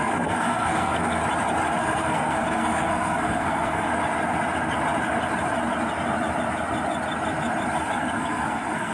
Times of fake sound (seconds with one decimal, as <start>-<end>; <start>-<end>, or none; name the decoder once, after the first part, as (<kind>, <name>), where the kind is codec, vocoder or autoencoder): 0.0-1.2 (codec, SNAC); 1.8-3.9; 7.9-8.9